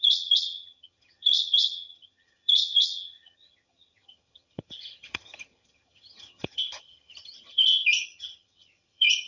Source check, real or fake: fake